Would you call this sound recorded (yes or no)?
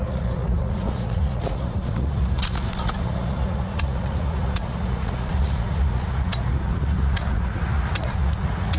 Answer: no